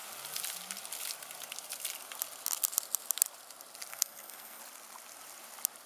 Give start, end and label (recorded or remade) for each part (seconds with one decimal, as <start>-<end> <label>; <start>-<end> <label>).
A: 0.0-3.9 recorded; 3.9-4.6 remade; 4.6-5.9 recorded